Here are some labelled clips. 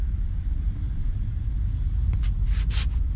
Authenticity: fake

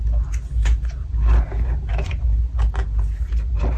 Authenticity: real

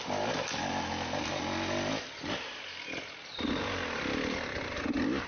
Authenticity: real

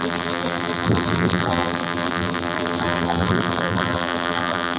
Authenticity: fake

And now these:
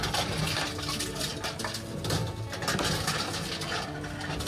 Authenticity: real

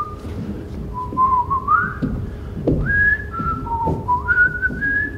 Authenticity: fake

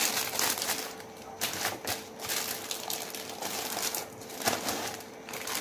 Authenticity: real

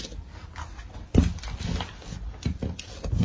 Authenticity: real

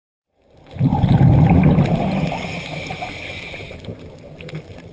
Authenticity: real